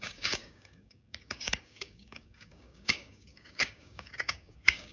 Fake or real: fake